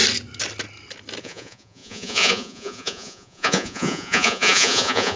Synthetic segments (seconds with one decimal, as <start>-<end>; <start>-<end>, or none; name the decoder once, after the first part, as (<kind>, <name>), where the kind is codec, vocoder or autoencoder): 1.2-5.2 (vocoder, Vocos)